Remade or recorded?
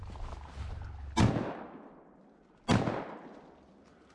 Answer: recorded